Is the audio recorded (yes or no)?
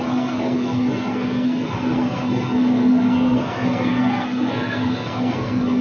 no